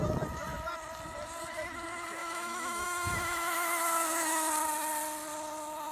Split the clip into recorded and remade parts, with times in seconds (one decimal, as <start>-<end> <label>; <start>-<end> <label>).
0.0-2.2 recorded; 2.2-4.5 remade; 4.5-5.9 recorded